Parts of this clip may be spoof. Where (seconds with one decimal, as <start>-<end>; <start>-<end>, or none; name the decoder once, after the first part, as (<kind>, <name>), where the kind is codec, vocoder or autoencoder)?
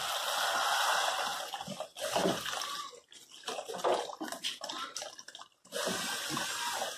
none